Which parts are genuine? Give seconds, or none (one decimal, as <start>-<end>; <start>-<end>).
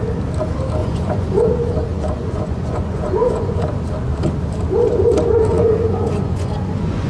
0.0-0.8; 1.4-1.9; 3.7-5.5